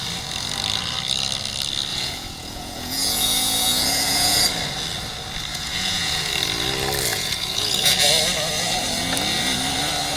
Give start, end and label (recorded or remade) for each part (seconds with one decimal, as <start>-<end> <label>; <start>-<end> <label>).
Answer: 0.0-1.9 recorded; 1.9-4.4 remade; 4.4-5.5 recorded; 5.5-6.3 remade; 6.3-7.1 recorded; 7.1-7.9 remade; 7.9-10.2 recorded